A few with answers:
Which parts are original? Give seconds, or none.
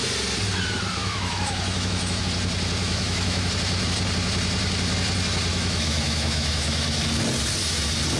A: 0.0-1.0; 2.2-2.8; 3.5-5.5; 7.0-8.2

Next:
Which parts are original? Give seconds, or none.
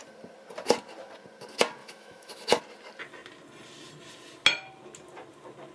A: 0.0-1.8; 2.6-5.7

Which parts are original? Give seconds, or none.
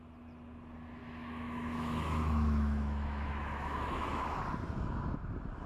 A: 0.0-1.0; 4.4-5.7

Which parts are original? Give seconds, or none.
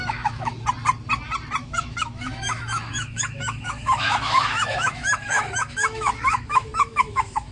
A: 0.5-1.6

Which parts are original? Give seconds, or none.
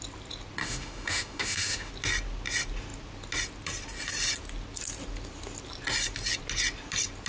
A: 0.0-0.6; 1.9-7.3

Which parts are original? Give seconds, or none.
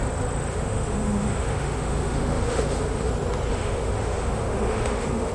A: 0.0-0.5; 3.1-3.5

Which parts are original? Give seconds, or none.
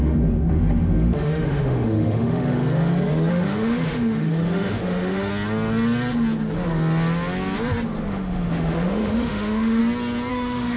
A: 2.6-3.3; 5.3-8.1; 9.8-10.3